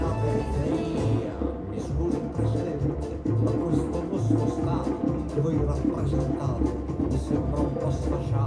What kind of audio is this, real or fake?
real